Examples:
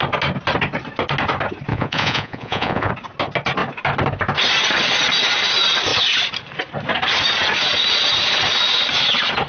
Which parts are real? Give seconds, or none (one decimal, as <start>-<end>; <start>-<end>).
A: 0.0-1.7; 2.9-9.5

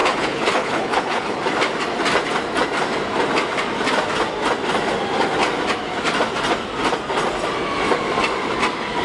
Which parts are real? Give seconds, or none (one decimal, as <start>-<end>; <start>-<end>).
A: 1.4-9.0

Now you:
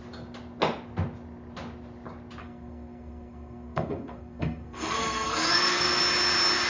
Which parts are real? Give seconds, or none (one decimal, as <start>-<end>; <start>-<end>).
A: 0.0-2.4; 6.0-6.7

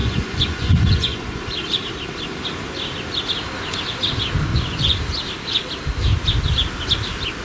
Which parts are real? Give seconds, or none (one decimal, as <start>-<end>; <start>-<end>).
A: 1.4-4.5; 5.0-7.4

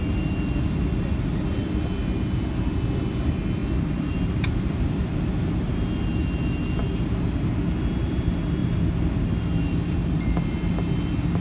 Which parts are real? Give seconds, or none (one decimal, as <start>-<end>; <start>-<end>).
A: 0.0-3.6; 5.6-8.6; 10.7-11.4

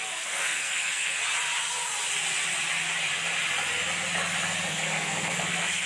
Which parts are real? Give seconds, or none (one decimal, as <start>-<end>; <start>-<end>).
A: 1.2-4.7